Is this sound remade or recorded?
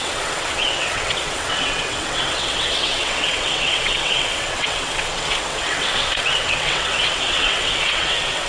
remade